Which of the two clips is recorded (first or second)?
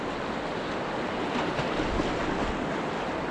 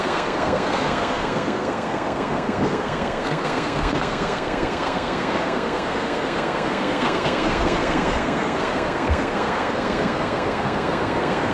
first